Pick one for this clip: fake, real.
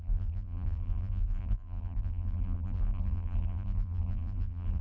fake